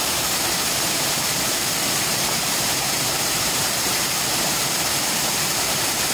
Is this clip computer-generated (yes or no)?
yes